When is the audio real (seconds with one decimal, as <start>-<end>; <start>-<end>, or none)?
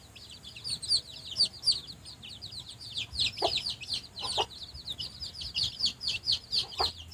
0.0-7.1